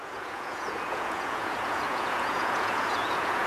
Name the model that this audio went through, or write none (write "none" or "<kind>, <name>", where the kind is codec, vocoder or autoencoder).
vocoder, Vocos